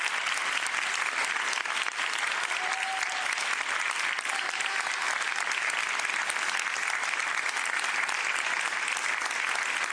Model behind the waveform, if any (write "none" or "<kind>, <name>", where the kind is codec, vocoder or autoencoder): none